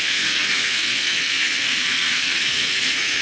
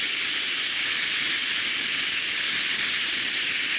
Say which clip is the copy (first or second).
first